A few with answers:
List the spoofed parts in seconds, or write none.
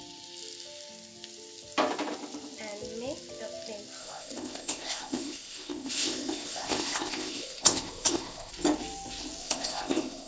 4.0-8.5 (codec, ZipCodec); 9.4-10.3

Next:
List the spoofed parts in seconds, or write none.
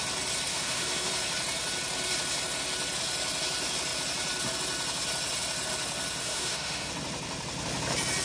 0.5-1.1 (autoencoder, DAC-VAE); 6.2-6.9